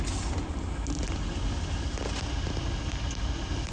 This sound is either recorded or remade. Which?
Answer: recorded